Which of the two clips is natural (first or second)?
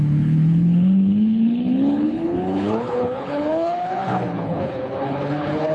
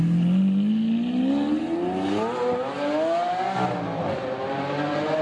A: second